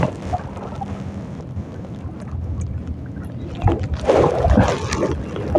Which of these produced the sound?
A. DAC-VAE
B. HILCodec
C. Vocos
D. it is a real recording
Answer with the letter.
D